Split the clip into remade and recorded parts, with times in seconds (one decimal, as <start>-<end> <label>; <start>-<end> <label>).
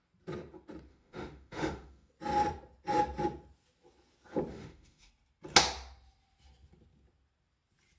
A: 0.0-0.9 recorded; 0.9-2.1 remade; 2.1-4.5 recorded; 4.5-5.1 remade; 5.1-8.0 recorded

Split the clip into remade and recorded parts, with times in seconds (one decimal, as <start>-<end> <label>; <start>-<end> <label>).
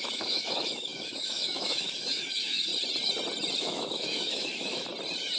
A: 0.0-2.7 remade; 2.7-3.6 recorded; 3.6-4.9 remade; 4.9-5.4 recorded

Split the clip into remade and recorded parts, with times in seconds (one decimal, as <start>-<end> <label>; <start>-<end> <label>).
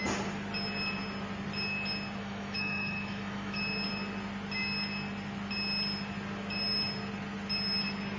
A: 0.0-2.2 recorded; 2.2-3.6 remade; 3.6-8.2 recorded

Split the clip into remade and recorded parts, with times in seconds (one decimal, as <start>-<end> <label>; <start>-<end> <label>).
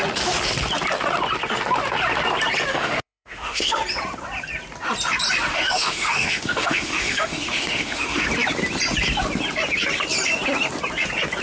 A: 0.0-2.7 recorded; 2.7-3.8 remade; 3.8-5.5 recorded; 5.5-8.3 remade; 8.3-11.4 recorded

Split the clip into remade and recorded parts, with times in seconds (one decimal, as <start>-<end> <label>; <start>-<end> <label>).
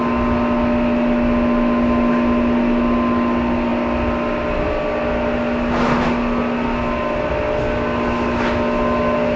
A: 0.0-9.4 recorded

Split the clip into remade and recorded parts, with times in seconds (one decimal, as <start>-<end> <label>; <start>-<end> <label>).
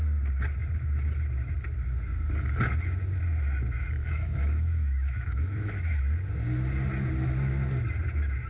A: 0.0-4.0 recorded; 4.0-6.0 remade; 6.0-8.5 recorded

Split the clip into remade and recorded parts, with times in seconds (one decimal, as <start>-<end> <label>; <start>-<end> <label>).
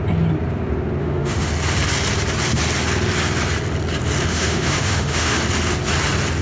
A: 0.0-1.0 recorded; 1.0-1.5 remade; 1.5-4.3 recorded; 4.3-5.4 remade; 5.4-6.4 recorded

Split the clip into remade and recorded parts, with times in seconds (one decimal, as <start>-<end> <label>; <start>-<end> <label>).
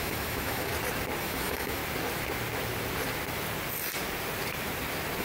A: 0.0-0.7 remade; 0.7-1.2 recorded; 1.2-1.8 remade; 1.8-5.2 recorded